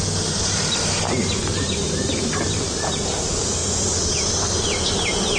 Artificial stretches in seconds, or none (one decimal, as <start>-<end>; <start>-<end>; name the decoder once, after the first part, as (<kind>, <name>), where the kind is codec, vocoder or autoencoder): none